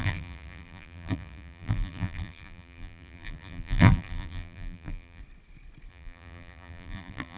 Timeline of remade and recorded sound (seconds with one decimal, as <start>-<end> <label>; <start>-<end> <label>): 0.0-5.2 remade; 5.2-5.9 recorded; 5.9-7.4 remade